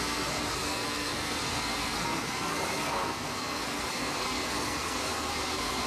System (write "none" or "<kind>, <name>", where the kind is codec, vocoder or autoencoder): codec, SNAC